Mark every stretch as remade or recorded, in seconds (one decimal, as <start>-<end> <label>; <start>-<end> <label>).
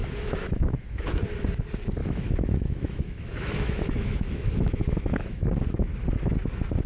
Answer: 0.0-1.2 remade; 1.2-2.0 recorded; 2.0-5.5 remade; 5.5-6.9 recorded